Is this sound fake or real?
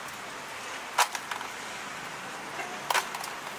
real